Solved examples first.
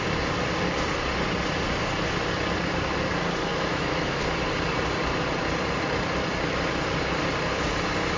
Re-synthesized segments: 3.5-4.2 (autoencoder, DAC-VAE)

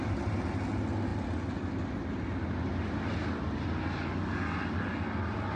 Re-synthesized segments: none

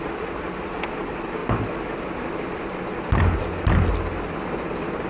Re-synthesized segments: none

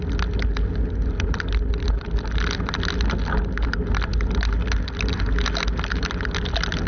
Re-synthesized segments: none

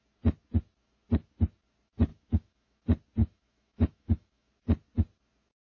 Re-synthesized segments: 2.1-2.8 (autoencoder, DAC-VAE); 3.2-4.5